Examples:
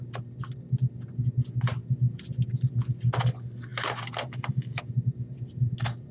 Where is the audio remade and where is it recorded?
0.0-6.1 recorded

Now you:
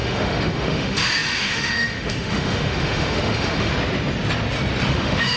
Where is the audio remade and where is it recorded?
0.0-3.7 remade; 3.7-4.9 recorded; 4.9-5.4 remade